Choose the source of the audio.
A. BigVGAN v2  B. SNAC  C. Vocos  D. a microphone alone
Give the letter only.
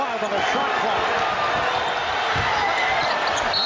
D